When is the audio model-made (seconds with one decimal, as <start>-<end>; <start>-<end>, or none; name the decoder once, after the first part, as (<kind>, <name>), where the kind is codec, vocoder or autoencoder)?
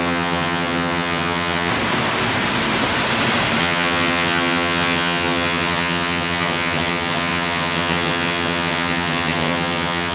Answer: 0.0-1.7 (vocoder, HiFi-GAN); 3.6-10.1